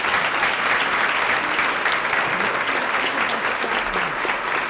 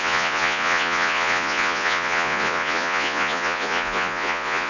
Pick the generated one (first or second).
second